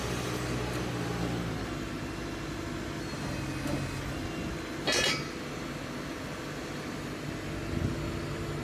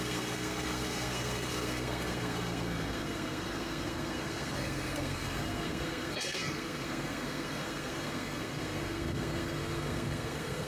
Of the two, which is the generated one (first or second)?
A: second